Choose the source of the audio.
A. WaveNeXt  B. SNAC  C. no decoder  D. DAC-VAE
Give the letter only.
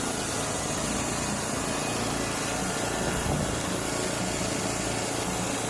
C